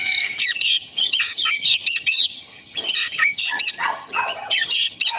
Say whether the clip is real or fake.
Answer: fake